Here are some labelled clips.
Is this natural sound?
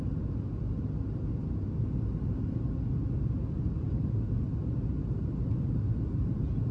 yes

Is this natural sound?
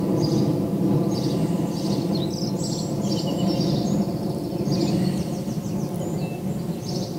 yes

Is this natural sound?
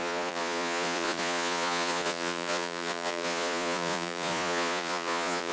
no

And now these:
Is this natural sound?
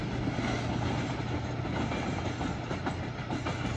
yes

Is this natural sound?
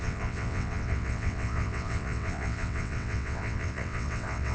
no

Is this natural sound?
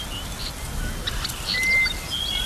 yes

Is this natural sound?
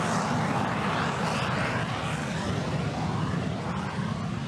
yes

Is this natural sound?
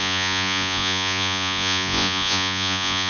no